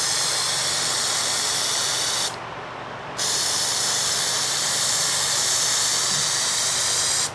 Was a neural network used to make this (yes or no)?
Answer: yes